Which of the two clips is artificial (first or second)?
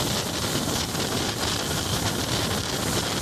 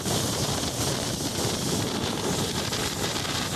second